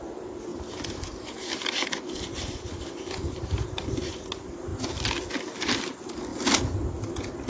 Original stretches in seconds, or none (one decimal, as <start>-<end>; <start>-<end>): 0.0-0.5; 4.1-7.5